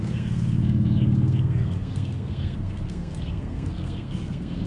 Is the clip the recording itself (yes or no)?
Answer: no